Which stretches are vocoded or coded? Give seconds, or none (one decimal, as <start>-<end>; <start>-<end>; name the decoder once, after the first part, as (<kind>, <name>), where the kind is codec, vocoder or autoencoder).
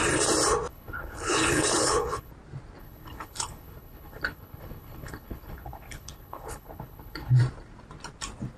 0.7-2.3 (codec, HILCodec); 2.8-7.4